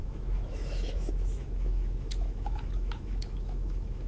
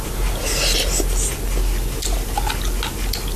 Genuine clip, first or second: second